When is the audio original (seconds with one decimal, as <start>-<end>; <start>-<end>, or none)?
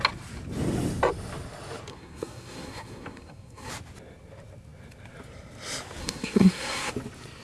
0.0-1.9; 3.7-6.0; 6.9-7.4